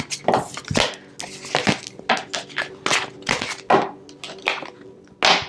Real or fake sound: real